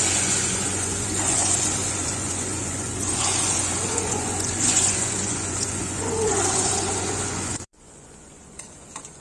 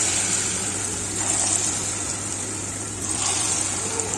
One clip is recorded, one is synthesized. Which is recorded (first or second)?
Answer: second